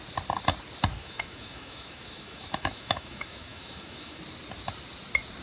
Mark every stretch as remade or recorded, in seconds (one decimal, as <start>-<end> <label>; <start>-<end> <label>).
0.0-1.0 recorded; 1.0-4.2 remade; 4.2-5.4 recorded